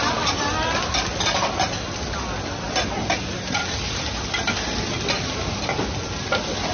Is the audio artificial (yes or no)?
no